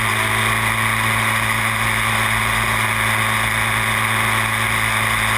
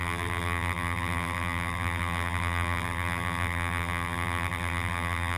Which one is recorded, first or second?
first